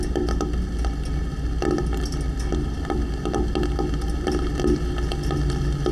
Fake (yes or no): no